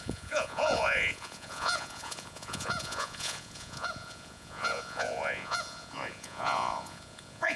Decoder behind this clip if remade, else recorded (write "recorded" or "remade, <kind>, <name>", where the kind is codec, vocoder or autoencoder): remade, vocoder, Vocos